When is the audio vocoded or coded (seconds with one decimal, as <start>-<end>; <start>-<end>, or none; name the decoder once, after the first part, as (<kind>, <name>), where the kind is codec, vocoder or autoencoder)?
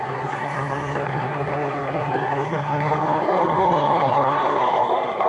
0.0-5.3 (codec, SNAC)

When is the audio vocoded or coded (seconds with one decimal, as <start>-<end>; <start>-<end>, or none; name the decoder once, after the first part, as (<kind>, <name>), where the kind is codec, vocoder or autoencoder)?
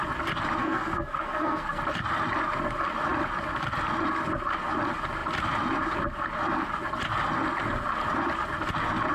0.6-1.8 (codec, SNAC)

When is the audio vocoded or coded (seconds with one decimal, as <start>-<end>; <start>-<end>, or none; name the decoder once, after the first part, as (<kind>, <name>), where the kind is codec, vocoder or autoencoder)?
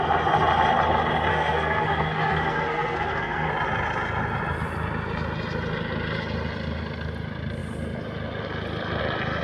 1.3-3.5 (codec, SNAC)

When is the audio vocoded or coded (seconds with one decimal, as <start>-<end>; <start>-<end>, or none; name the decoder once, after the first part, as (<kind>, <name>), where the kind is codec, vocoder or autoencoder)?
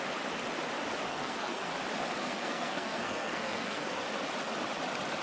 1.1-1.7 (codec, SNAC); 2.2-4.0